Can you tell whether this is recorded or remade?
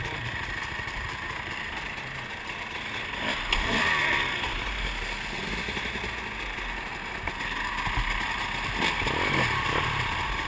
recorded